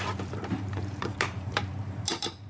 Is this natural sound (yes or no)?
no